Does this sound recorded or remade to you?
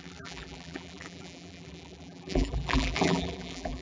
remade